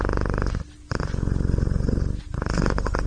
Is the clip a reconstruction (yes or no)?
no